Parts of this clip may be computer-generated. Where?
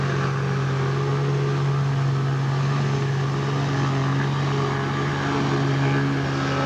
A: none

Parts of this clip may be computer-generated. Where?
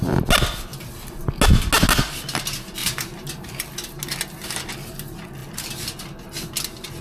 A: 2.8-3.6 (vocoder, BigVGAN v2)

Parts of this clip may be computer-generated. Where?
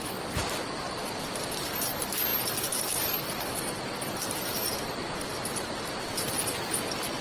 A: none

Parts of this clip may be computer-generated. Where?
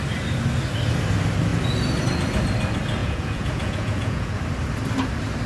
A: 3.0-4.4 (vocoder, Vocos)